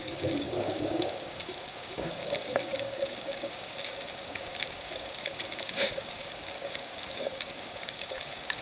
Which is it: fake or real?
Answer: fake